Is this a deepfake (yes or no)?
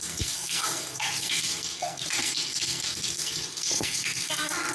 yes